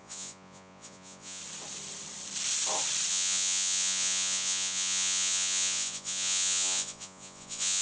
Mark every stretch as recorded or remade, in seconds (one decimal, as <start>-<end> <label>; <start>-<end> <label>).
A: 0.0-1.4 remade; 1.4-3.1 recorded; 3.1-7.8 remade